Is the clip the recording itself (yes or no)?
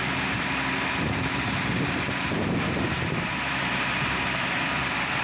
no